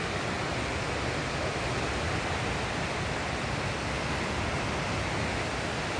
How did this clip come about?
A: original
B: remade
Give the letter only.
A